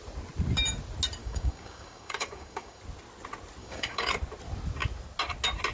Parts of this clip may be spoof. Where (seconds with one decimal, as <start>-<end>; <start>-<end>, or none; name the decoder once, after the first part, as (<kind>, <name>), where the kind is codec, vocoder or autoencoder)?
1.2-2.8 (codec, DAC); 3.6-4.1